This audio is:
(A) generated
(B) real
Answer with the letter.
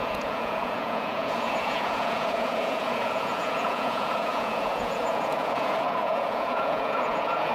A